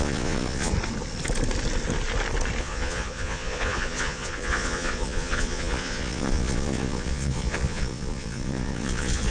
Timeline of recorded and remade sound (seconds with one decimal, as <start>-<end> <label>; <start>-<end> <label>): 0.0-0.7 remade; 0.7-2.6 recorded; 2.6-9.3 remade